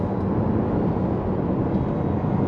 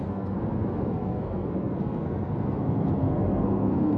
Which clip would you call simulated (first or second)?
second